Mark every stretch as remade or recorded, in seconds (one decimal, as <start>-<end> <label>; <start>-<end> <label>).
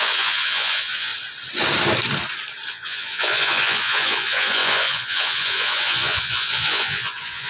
0.0-1.1 remade; 1.1-2.7 recorded; 2.7-7.5 remade